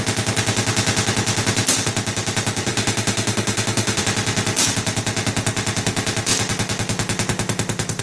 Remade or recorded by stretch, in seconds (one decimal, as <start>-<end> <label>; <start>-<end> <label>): 0.0-2.7 recorded; 2.7-4.0 remade; 4.0-8.0 recorded